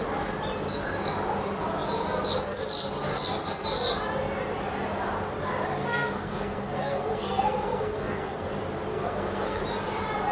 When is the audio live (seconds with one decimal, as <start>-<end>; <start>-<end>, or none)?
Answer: 0.0-5.8; 8.5-8.9; 9.6-10.3